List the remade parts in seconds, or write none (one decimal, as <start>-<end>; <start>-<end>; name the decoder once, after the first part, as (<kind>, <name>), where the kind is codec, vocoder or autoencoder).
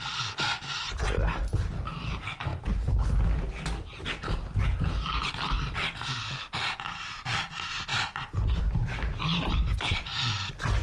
none